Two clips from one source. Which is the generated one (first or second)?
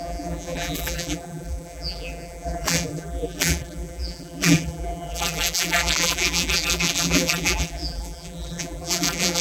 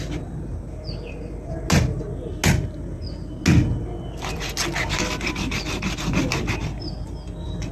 first